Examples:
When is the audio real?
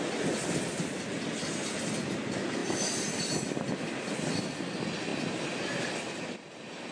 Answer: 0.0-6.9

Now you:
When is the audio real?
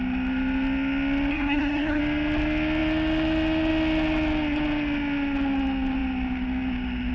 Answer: 0.0-1.3; 2.0-7.1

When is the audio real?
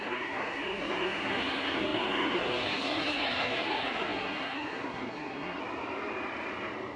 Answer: 5.6-7.0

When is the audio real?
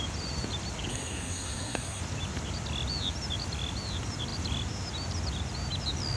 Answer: 0.0-0.9; 2.0-6.2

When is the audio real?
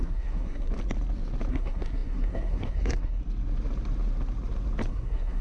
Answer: 0.7-1.5; 3.2-4.9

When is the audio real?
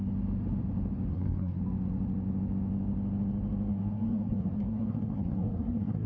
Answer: 0.0-1.1; 1.6-3.7